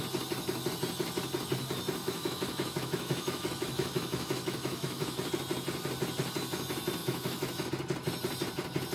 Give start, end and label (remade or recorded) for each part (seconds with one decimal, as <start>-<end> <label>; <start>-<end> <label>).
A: 0.0-2.0 recorded; 2.0-5.3 remade; 5.3-7.0 recorded; 7.0-7.7 remade; 7.7-8.9 recorded